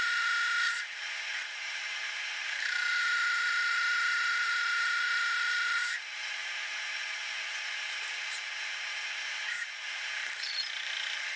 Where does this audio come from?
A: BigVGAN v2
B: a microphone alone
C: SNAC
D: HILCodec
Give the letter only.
A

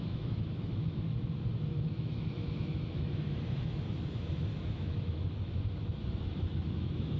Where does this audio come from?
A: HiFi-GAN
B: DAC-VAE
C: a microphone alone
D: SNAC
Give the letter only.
B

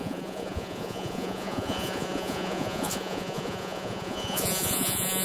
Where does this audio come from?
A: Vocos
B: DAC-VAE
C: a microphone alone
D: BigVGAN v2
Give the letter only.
A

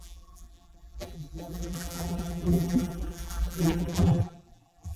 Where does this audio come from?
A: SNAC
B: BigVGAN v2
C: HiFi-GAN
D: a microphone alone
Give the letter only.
B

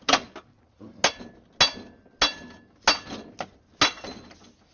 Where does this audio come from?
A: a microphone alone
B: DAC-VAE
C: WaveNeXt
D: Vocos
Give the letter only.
A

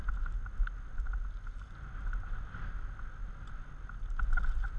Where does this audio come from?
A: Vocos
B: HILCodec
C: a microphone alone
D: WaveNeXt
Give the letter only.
C